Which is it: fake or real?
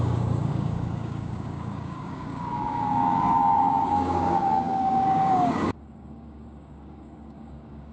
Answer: fake